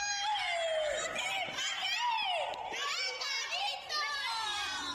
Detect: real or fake real